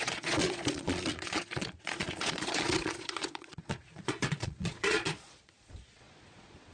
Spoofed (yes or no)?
yes